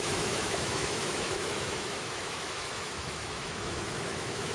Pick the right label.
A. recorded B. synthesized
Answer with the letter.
B